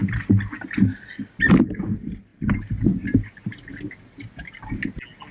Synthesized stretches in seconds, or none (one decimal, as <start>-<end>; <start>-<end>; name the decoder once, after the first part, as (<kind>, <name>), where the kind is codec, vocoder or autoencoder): none